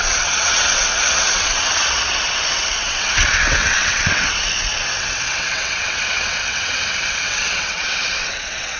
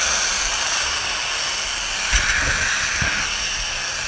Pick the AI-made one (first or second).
first